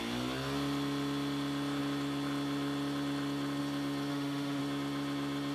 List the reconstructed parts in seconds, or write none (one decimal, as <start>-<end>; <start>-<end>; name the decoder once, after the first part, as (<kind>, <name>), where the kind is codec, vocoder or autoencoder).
4.1-4.6 (autoencoder, DAC-VAE)